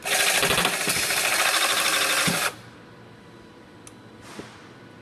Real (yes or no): yes